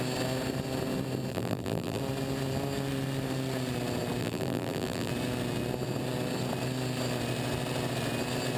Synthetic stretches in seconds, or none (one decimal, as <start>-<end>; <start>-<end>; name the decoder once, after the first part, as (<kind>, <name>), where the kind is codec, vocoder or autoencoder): 1.3-2.0 (vocoder, BigVGAN v2); 4.2-5.1